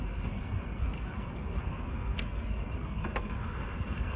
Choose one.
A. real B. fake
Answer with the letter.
B